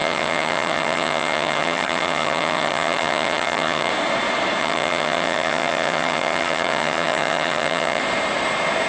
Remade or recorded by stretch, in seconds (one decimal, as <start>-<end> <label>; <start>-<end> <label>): 0.0-3.9 remade; 3.9-4.6 recorded; 4.6-8.0 remade; 8.0-8.9 recorded